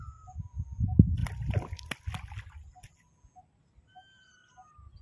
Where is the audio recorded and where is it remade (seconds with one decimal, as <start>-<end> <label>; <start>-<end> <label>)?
0.0-1.2 recorded; 1.2-2.0 remade; 2.0-5.0 recorded